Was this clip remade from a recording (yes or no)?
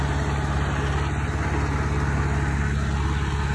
no